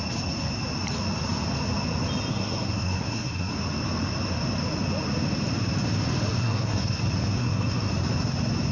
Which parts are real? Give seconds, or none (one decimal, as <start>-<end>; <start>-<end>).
0.0-2.3; 3.5-6.4; 7.0-7.4; 7.9-8.7